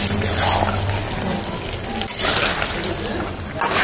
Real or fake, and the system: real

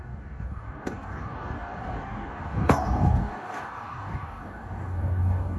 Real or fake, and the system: fake, codec, DAC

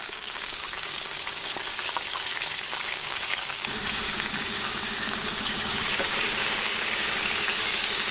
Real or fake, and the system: fake, codec, DAC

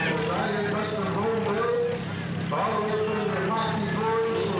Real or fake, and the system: real